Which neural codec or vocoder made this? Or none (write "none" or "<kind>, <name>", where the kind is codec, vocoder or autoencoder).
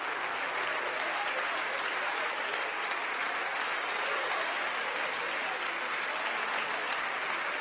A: none